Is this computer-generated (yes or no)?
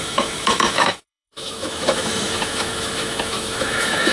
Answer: yes